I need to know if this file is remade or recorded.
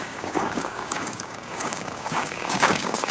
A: remade